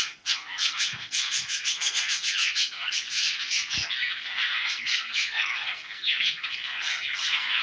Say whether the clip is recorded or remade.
remade